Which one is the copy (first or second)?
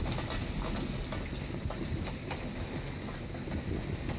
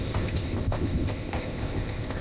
second